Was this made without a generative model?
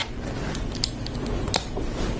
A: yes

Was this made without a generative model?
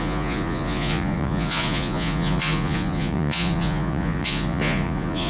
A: no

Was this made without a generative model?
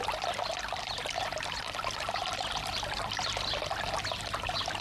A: yes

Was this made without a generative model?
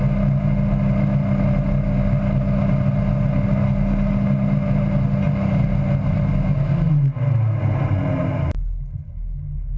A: yes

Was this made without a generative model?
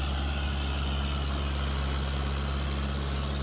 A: yes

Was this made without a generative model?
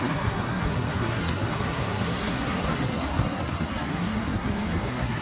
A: no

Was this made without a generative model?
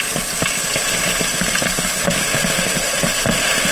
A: yes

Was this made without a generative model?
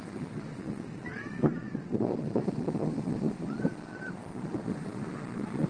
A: no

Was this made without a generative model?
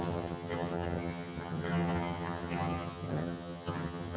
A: no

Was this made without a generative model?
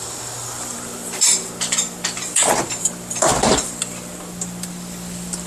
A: no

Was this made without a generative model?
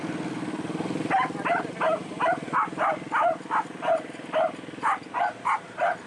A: yes